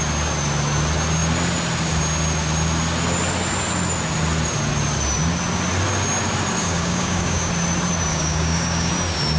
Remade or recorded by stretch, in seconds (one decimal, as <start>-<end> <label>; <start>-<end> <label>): 0.0-6.6 recorded; 6.6-7.5 remade; 7.5-8.1 recorded; 8.1-8.9 remade; 8.9-9.4 recorded